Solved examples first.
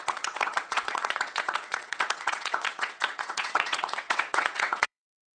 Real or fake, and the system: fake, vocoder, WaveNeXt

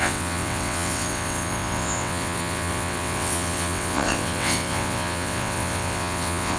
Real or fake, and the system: fake, vocoder, WaveNeXt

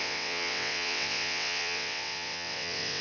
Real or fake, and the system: fake, vocoder, WaveNeXt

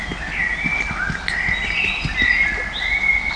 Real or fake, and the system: real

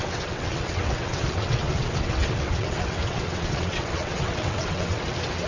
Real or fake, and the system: fake, vocoder, WaveNeXt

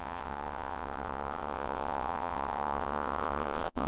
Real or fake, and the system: fake, vocoder, WaveNeXt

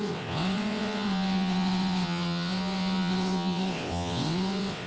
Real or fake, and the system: fake, vocoder, WaveNeXt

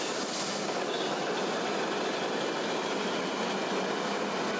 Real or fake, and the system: real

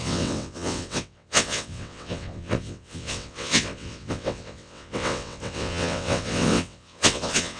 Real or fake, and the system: fake, vocoder, WaveNeXt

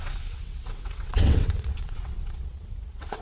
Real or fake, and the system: fake, vocoder, WaveNeXt